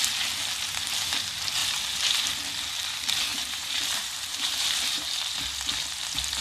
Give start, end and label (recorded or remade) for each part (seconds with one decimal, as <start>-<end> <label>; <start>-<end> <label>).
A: 0.0-3.3 recorded; 3.3-5.3 remade; 5.3-6.4 recorded